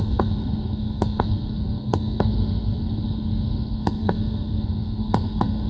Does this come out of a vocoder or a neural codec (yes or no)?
yes